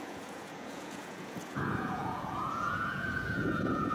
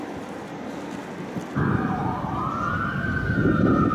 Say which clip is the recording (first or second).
second